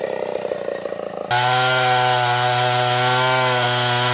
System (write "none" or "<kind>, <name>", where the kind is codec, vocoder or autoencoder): none